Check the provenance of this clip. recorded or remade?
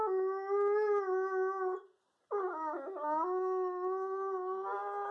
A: recorded